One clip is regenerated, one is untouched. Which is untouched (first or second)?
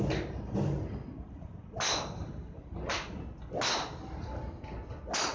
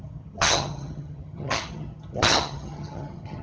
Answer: first